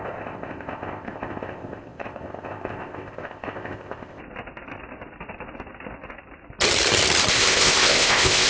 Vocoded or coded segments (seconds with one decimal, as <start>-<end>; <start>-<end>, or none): 0.0-4.2; 7.3-8.5